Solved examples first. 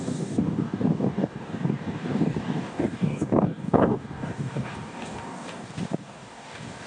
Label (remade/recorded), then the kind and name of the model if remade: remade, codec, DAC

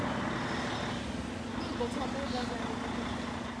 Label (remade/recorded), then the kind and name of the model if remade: recorded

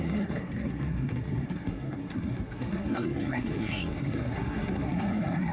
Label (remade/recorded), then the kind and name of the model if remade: remade, codec, SNAC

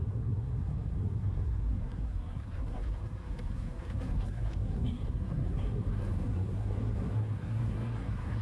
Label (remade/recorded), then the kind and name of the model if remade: remade, codec, SNAC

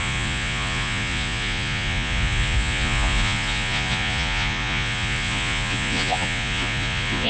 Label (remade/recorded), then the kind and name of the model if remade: remade, vocoder, Vocos